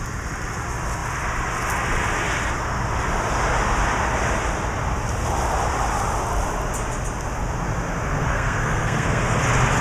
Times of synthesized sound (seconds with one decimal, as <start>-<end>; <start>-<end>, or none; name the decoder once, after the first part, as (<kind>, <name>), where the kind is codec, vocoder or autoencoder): 8.2-9.4 (codec, SNAC)